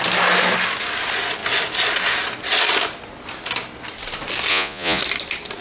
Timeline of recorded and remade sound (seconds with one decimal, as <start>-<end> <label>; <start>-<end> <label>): 0.0-4.5 recorded; 4.5-5.0 remade; 5.0-5.6 recorded